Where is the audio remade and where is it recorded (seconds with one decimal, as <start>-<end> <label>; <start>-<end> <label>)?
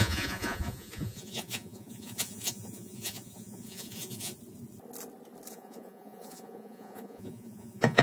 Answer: 0.0-4.3 remade; 4.3-5.5 recorded; 5.5-8.0 remade